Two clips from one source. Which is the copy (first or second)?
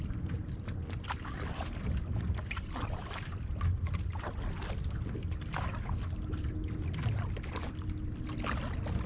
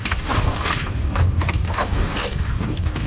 second